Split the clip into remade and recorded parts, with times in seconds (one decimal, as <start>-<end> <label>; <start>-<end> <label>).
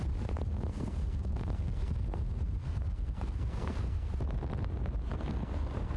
0.0-0.5 recorded; 0.5-4.1 remade; 4.1-5.1 recorded; 5.1-6.0 remade